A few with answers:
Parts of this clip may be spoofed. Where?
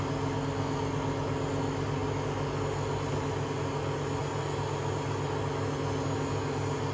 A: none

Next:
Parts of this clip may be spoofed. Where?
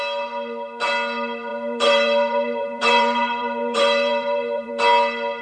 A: 1.5-4.7 (vocoder, BigVGAN v2)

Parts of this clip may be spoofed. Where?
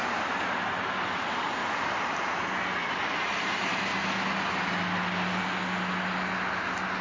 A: 0.0-3.9 (vocoder, BigVGAN v2)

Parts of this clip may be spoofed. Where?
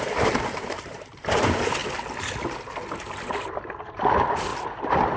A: 0.0-1.8 (vocoder, BigVGAN v2); 3.1-4.5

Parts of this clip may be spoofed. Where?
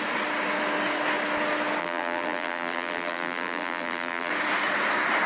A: 1.8-4.3 (vocoder, BigVGAN v2)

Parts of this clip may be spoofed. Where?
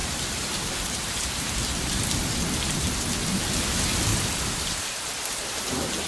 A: 0.0-3.4 (vocoder, BigVGAN v2); 4.1-6.1